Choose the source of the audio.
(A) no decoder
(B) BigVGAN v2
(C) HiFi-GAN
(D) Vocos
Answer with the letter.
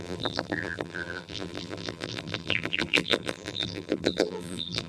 B